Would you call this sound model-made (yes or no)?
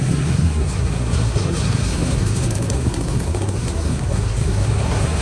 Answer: yes